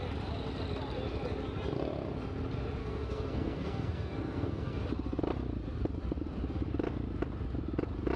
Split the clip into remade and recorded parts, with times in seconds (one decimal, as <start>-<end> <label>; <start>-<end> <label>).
0.0-2.8 recorded; 2.8-4.8 remade; 4.8-8.2 recorded